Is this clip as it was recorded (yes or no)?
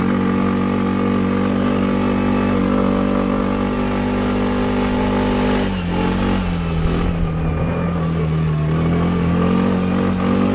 yes